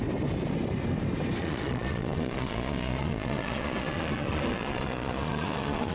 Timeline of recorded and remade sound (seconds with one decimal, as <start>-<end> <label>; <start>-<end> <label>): 0.0-1.4 recorded; 1.4-5.9 remade